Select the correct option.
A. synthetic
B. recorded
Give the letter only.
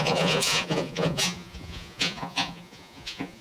A